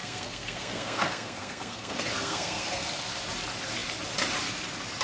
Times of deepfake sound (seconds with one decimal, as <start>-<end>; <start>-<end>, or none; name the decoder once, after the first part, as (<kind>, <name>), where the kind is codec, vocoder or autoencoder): 0.0-3.0 (codec, SNAC)